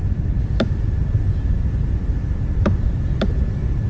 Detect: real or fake fake